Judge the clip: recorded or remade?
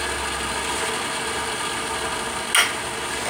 recorded